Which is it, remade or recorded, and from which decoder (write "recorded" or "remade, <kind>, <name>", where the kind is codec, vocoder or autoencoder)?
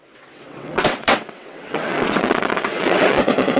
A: remade, vocoder, WaveNeXt